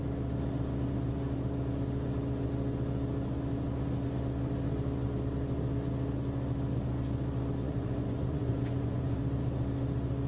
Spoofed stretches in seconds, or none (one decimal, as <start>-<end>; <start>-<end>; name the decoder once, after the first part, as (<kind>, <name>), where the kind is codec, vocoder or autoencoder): 7.6-9.2 (vocoder, Vocos)